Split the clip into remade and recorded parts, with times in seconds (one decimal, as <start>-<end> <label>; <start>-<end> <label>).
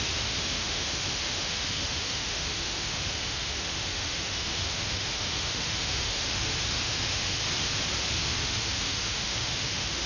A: 0.0-7.4 remade; 7.4-8.1 recorded; 8.1-10.1 remade